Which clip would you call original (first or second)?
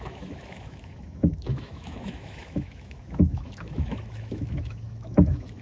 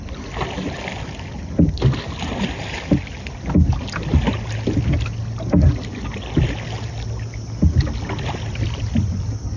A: second